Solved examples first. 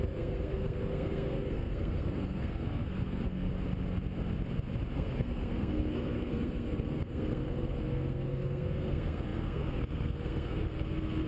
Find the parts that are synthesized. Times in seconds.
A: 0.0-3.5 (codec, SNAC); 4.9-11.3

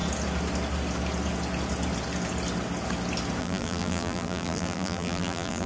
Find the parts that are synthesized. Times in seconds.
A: 3.4-5.7 (vocoder, BigVGAN v2)